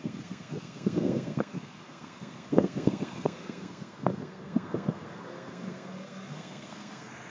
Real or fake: fake